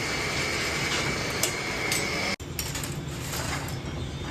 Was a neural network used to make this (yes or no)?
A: no